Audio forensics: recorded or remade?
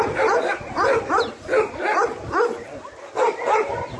recorded